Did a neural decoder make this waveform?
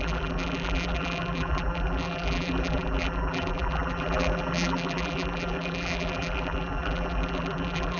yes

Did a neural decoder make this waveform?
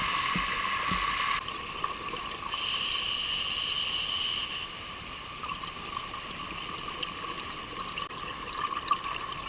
no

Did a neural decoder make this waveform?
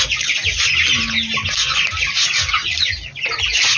no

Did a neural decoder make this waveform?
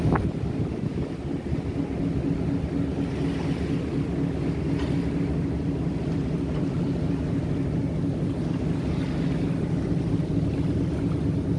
no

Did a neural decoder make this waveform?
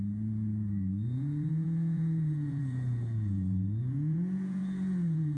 yes